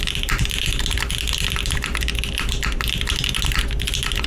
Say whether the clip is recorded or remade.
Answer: recorded